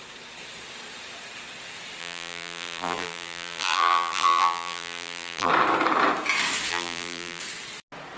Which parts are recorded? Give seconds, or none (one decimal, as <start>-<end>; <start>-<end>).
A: 0.0-2.0; 5.5-6.7; 7.4-8.2